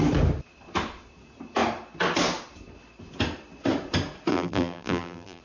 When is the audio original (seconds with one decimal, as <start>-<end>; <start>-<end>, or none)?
0.0-4.3